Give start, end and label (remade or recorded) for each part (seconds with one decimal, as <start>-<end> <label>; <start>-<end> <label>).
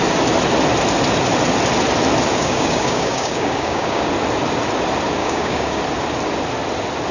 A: 0.0-2.3 recorded; 2.3-4.1 remade; 4.1-5.2 recorded; 5.2-5.8 remade; 5.8-7.1 recorded